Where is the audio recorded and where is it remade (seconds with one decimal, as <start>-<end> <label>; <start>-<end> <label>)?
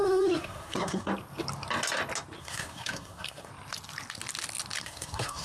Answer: 0.0-1.1 remade; 1.1-2.4 recorded; 2.4-3.5 remade; 3.5-4.8 recorded; 4.8-5.4 remade